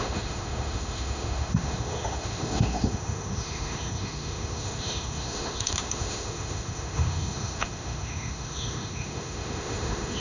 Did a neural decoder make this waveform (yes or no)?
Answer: yes